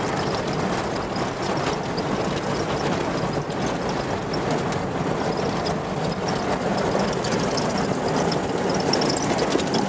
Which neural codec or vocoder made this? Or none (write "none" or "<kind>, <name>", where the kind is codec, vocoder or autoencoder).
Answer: none